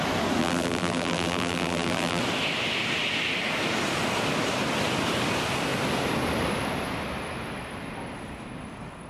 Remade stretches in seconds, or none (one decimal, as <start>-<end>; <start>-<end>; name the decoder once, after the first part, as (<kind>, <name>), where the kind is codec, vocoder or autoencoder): 0.4-2.2 (vocoder, BigVGAN v2)